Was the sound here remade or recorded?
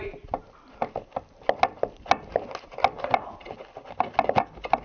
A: recorded